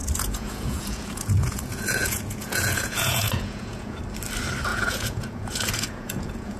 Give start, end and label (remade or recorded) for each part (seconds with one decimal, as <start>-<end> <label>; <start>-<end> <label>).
0.0-4.0 remade; 4.0-4.7 recorded; 4.7-6.6 remade